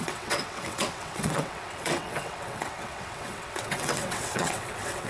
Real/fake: fake